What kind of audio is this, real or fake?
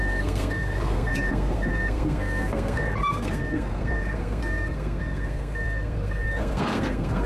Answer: fake